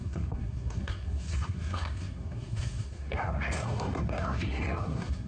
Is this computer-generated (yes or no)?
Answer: yes